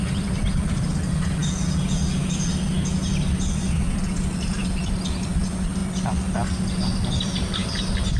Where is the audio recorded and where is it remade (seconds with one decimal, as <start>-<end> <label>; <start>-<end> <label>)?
0.0-1.4 remade; 1.4-3.5 recorded; 3.5-5.8 remade; 5.8-6.7 recorded; 6.7-8.2 remade